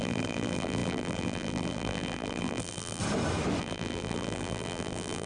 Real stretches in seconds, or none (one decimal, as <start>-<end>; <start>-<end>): 3.0-3.6